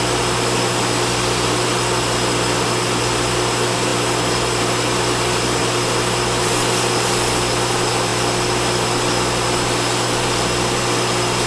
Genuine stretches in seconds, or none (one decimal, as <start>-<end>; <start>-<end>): 0.0-11.5